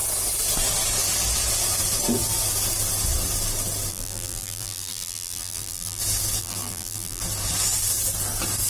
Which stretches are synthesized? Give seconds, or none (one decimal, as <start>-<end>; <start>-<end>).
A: 3.9-6.0; 6.4-7.2